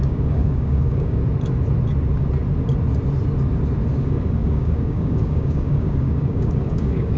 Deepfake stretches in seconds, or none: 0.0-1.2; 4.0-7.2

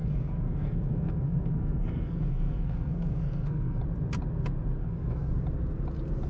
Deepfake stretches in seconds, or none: 0.0-3.8; 4.8-5.3

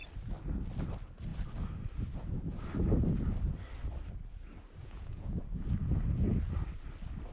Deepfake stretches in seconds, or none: 4.8-5.4

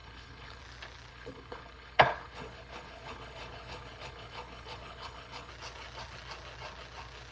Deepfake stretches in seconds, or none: 0.0-0.6; 1.1-5.5

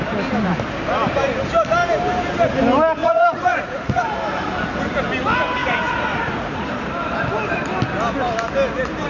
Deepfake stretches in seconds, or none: 3.0-4.0; 5.6-6.7